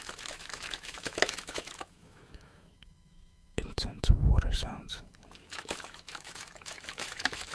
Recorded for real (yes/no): no